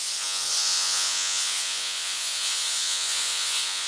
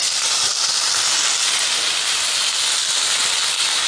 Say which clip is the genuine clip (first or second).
second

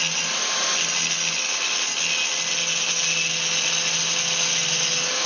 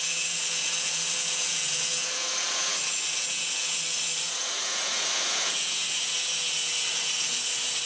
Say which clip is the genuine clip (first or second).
first